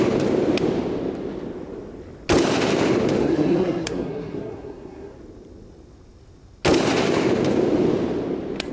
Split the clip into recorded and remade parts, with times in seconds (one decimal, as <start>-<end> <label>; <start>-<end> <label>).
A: 0.0-3.2 recorded; 3.2-5.2 remade; 5.2-8.7 recorded